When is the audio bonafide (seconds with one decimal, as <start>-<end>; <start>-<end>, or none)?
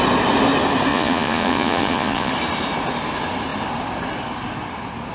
0.0-0.9; 2.3-5.1